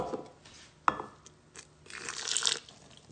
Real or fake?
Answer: real